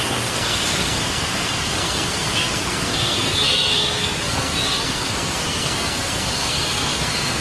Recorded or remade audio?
remade